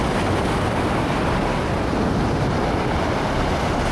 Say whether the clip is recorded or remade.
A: recorded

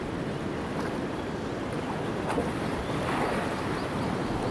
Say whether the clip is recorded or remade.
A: recorded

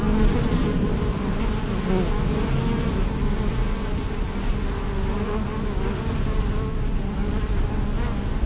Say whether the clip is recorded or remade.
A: recorded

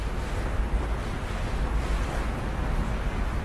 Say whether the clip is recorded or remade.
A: recorded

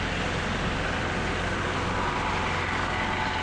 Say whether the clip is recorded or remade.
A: recorded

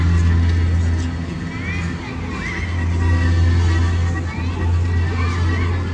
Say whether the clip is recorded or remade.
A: recorded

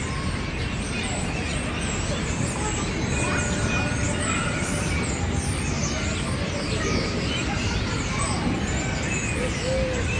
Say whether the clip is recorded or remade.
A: recorded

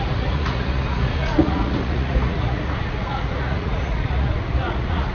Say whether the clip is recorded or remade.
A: remade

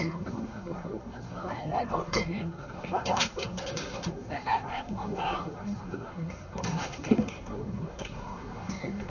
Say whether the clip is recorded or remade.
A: remade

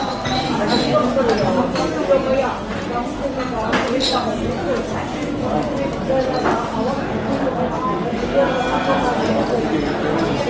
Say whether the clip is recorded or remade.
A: recorded